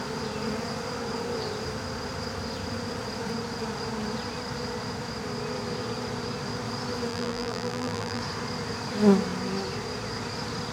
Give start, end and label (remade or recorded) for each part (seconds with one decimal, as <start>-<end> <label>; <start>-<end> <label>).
0.0-7.1 recorded; 7.1-8.2 remade; 8.2-10.7 recorded